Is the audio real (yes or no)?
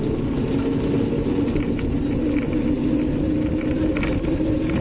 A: yes